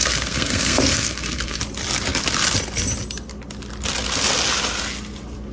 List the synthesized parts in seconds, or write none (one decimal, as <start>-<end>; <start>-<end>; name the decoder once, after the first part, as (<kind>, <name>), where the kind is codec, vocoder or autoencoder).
0.0-1.6 (codec, SNAC)